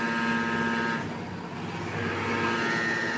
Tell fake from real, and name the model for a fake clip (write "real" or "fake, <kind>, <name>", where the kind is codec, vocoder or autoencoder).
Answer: real